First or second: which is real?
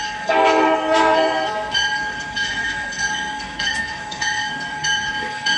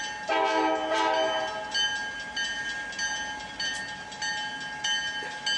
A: second